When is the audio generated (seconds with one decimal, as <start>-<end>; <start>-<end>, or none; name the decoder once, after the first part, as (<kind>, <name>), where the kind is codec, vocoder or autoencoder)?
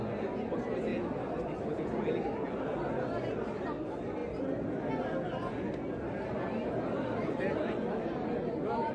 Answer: none